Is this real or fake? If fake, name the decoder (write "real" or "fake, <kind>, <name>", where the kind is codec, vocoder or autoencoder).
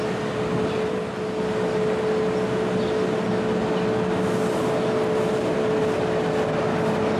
real